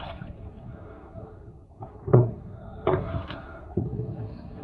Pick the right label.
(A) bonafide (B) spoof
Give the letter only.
B